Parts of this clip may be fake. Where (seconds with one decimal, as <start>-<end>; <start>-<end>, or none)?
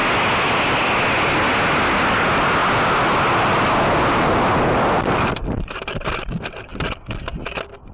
none